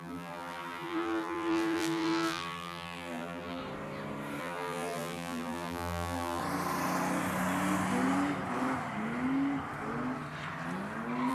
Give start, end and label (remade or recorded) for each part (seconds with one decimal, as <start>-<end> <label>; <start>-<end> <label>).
0.0-3.6 remade; 3.6-4.4 recorded; 4.4-6.4 remade; 6.4-11.3 recorded